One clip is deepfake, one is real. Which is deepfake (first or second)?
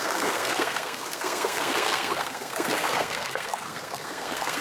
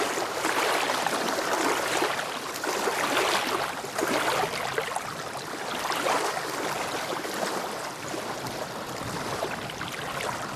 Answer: first